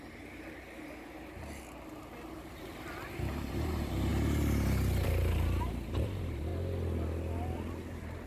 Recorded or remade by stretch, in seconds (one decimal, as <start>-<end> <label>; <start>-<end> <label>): 0.0-6.5 remade; 6.5-8.3 recorded